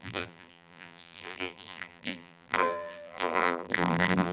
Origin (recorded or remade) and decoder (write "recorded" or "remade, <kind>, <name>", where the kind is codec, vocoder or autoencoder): remade, vocoder, BigVGAN v2